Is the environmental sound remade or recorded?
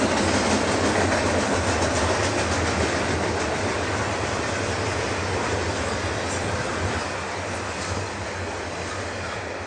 recorded